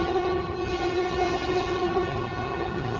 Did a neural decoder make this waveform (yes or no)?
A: yes